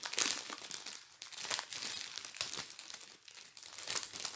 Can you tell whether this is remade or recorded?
recorded